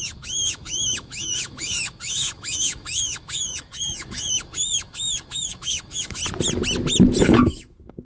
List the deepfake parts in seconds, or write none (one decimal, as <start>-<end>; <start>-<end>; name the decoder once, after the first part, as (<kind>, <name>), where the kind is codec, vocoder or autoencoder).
0.0-6.2 (autoencoder, DAC-VAE); 7.2-8.0